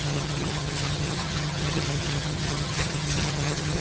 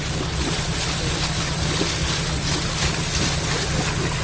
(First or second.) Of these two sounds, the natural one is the second